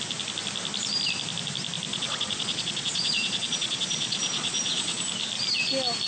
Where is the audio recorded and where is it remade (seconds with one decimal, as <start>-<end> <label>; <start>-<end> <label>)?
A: 0.0-1.9 recorded; 1.9-5.0 remade; 5.0-6.1 recorded